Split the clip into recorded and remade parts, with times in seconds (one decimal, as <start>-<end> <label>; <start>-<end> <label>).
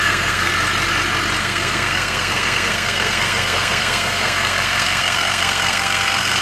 0.0-0.5 remade; 0.5-1.4 recorded; 1.4-6.4 remade